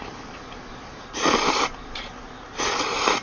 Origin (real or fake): fake